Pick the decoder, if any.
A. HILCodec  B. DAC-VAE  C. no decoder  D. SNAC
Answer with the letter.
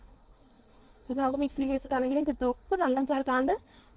D